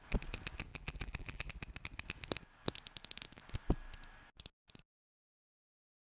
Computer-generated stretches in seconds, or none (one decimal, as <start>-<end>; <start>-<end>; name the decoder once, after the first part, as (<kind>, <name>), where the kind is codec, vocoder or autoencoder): 0.7-1.5 (vocoder, BigVGAN v2)